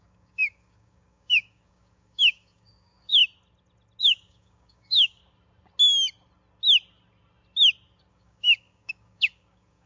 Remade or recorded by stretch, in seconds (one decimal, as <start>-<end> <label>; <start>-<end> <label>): 0.0-3.2 remade; 3.2-4.0 recorded; 4.0-5.2 remade; 5.2-8.1 recorded; 8.1-9.9 remade